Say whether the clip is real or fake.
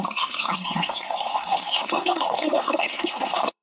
fake